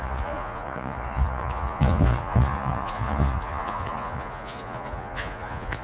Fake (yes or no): yes